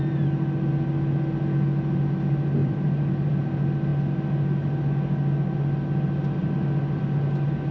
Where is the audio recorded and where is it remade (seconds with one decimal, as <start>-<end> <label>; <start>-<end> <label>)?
0.0-2.6 recorded; 2.6-3.3 remade; 3.3-7.7 recorded